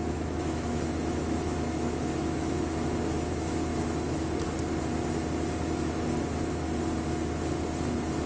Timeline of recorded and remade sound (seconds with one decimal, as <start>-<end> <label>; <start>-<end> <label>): 0.0-3.3 remade; 3.3-3.7 recorded; 3.7-4.3 remade; 4.3-8.3 recorded